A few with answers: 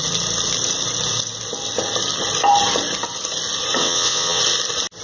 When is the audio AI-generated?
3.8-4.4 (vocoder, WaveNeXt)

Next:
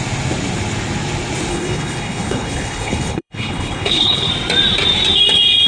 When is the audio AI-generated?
1.5-4.3 (codec, HILCodec)

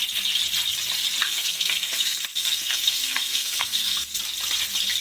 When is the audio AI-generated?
1.2-4.2 (codec, SNAC)

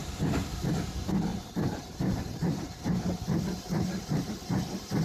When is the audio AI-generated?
0.0-0.7 (vocoder, BigVGAN v2); 1.3-4.3

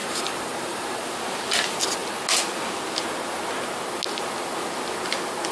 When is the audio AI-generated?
0.0-1.1 (vocoder, BigVGAN v2)